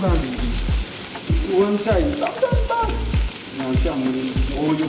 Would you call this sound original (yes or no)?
yes